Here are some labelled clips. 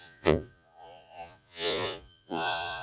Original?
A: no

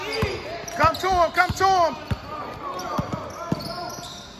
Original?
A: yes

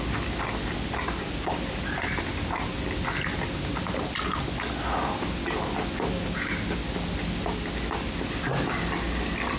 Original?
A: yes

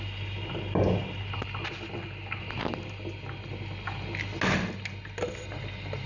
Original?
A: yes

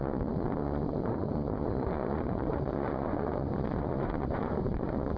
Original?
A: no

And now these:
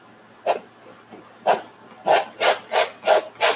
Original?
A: yes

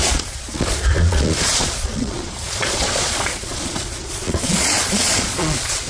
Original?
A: no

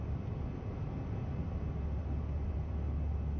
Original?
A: yes